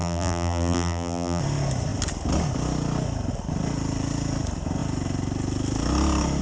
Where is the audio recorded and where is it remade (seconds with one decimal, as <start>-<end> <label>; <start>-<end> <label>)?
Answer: 0.0-1.4 remade; 1.4-6.4 recorded